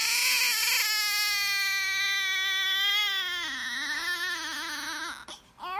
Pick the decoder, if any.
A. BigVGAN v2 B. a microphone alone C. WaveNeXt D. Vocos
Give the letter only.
B